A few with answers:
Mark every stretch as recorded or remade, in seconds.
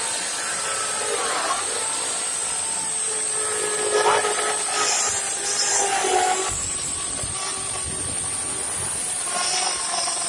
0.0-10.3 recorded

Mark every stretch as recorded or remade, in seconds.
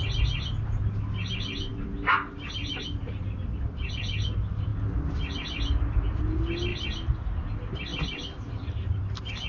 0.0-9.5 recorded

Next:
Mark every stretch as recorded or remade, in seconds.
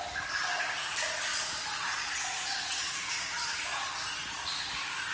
0.0-1.3 recorded; 1.3-3.9 remade; 3.9-5.1 recorded